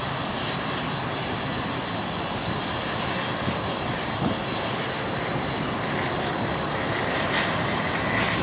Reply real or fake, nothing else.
real